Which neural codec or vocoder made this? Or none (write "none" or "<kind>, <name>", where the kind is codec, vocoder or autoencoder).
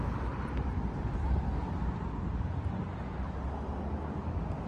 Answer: vocoder, BigVGAN v2